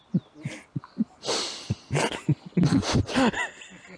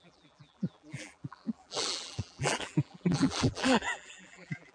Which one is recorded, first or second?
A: first